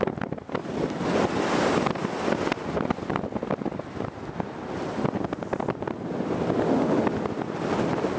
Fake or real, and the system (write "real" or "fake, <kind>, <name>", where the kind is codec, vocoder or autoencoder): real